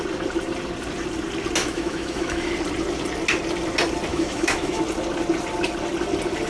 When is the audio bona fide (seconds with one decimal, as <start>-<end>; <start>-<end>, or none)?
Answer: 0.0-1.6; 2.5-4.1; 4.8-6.5